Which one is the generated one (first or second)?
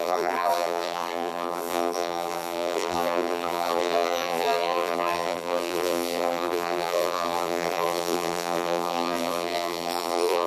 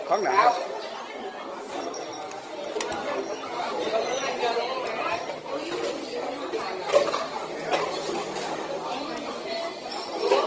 first